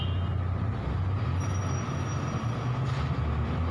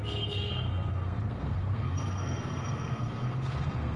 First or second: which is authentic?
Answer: first